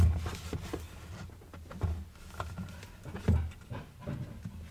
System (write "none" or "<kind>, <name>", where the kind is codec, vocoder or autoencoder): none